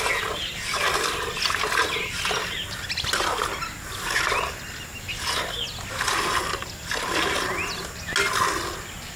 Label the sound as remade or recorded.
recorded